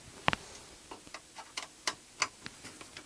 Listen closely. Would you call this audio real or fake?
real